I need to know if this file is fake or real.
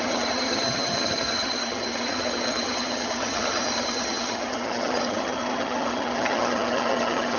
fake